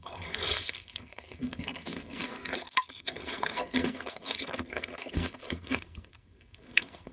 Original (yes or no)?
no